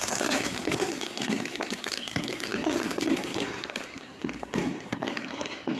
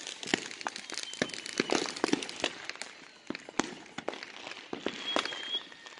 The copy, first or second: first